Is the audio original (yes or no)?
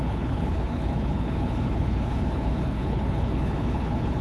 no